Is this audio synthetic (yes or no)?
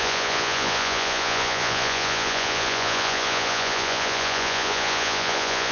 yes